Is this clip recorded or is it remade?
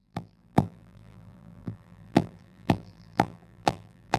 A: remade